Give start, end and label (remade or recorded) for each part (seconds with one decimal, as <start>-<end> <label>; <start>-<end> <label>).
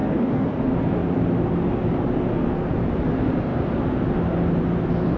0.0-0.6 remade; 0.6-5.2 recorded